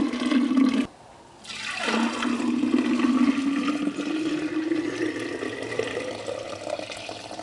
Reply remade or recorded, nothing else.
recorded